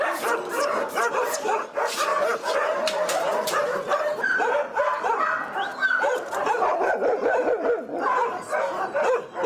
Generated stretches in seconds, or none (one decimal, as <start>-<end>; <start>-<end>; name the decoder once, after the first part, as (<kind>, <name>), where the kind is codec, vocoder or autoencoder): 2.1-5.2 (vocoder, BigVGAN v2); 5.7-7.5